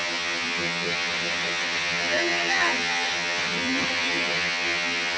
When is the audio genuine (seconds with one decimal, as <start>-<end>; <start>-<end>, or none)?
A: none